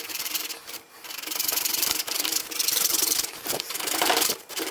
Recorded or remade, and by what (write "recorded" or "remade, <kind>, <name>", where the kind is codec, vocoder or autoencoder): remade, vocoder, BigVGAN v2